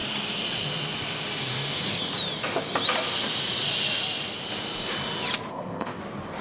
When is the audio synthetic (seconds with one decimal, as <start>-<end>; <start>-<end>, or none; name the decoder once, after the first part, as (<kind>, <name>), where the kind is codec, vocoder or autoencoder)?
5.5-6.0 (codec, ZipCodec)